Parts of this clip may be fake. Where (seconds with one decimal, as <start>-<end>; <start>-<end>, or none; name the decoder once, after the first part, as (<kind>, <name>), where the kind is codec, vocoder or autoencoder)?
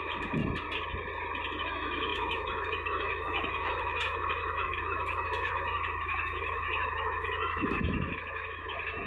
0.0-0.4 (autoencoder, DAC-VAE); 1.6-9.1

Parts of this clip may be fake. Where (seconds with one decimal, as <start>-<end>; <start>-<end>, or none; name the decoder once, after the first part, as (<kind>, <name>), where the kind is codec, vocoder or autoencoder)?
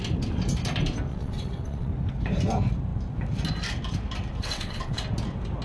1.1-1.9 (vocoder, WaveNeXt); 4.4-5.0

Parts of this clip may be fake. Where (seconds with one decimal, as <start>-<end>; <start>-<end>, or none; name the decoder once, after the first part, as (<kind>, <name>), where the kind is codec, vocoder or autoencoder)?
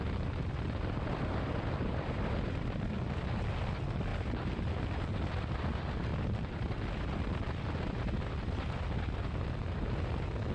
none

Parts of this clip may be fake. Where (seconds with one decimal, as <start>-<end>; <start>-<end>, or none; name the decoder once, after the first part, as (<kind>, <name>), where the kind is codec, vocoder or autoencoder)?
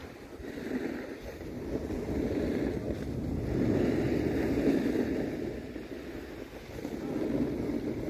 none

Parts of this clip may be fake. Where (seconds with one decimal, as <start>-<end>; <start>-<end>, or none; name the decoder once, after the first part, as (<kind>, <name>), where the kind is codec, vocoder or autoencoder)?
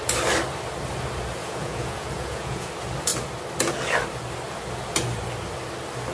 1.4-2.7 (vocoder, Vocos)